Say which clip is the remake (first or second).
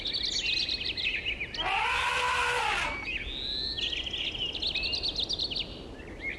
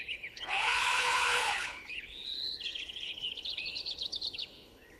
second